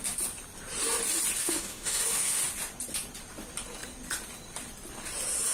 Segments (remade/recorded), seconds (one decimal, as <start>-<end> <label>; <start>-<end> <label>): 0.0-1.4 recorded; 1.4-2.4 remade; 2.4-5.5 recorded